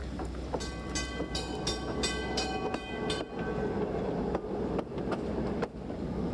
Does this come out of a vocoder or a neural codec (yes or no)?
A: no